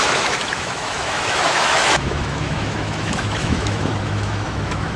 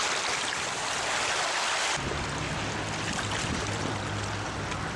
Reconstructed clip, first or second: first